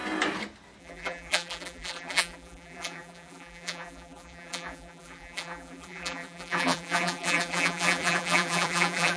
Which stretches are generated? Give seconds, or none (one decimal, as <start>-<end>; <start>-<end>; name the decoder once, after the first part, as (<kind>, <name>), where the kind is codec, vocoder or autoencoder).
0.8-9.2 (vocoder, BigVGAN v2)